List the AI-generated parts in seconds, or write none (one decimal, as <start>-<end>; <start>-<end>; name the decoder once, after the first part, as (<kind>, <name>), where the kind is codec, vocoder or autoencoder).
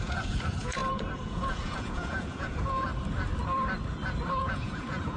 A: 0.0-2.9 (vocoder, Vocos); 4.4-5.2